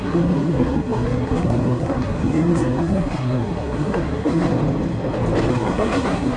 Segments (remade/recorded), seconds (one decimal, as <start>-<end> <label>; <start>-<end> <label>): 0.0-4.6 remade; 4.6-5.5 recorded; 5.5-6.4 remade